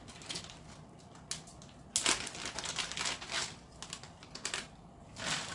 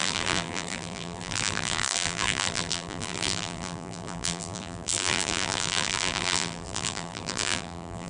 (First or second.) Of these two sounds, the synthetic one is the second